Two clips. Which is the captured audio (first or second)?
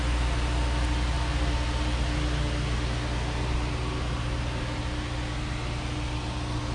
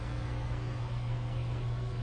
first